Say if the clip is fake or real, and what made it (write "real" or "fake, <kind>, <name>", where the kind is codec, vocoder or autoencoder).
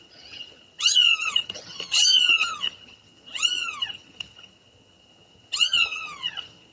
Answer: fake, vocoder, HiFi-GAN